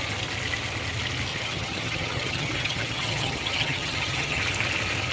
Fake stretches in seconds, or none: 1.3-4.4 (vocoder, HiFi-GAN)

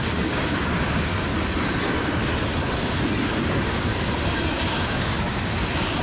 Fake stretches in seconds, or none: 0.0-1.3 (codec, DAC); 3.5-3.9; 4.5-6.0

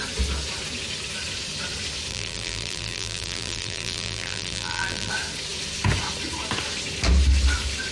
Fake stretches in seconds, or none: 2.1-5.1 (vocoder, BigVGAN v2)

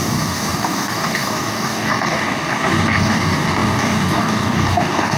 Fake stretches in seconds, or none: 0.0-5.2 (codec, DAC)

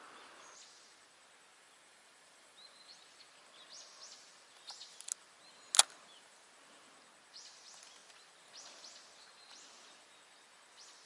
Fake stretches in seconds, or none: 1.5-2.9 (vocoder, BigVGAN v2)